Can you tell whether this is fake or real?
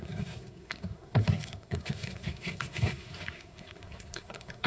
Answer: fake